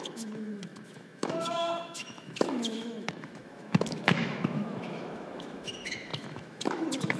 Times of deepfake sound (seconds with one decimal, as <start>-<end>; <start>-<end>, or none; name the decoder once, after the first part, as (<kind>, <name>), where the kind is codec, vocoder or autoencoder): 0.0-7.2 (autoencoder, DAC-VAE)